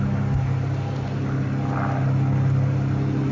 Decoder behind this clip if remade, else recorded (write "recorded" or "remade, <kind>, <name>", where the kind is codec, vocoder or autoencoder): recorded